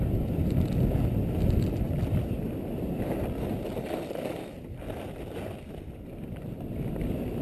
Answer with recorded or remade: recorded